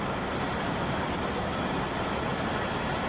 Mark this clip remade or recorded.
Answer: recorded